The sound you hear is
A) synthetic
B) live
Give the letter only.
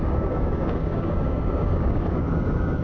A